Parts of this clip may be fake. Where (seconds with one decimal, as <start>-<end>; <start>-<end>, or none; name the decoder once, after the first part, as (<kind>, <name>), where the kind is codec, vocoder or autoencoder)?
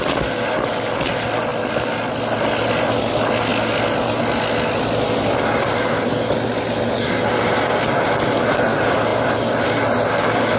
none